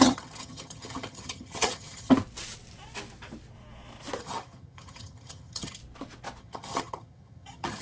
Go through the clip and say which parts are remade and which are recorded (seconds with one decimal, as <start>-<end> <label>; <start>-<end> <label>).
0.0-2.1 remade; 2.1-4.2 recorded; 4.2-5.8 remade; 5.8-6.4 recorded; 6.4-7.8 remade